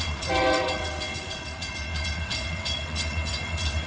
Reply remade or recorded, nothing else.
remade